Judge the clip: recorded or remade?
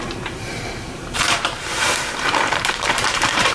remade